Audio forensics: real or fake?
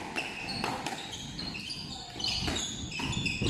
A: real